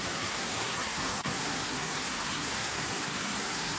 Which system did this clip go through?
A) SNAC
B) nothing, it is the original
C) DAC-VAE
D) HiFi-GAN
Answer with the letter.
A